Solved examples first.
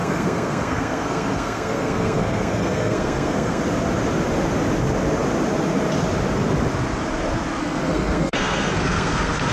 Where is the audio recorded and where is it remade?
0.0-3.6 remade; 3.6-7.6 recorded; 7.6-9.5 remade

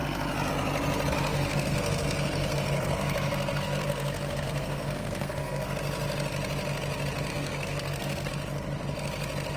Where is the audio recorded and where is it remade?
0.0-1.3 recorded; 1.3-5.7 remade; 5.7-7.3 recorded; 7.3-8.3 remade; 8.3-9.6 recorded

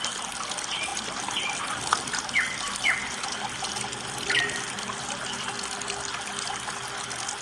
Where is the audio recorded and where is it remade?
0.0-7.4 recorded

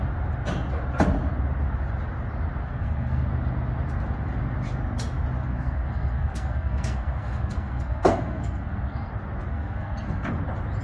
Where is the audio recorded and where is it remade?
0.0-2.6 recorded; 2.6-3.3 remade; 3.3-5.4 recorded; 5.4-9.1 remade; 9.1-9.5 recorded; 9.5-10.3 remade; 10.3-10.8 recorded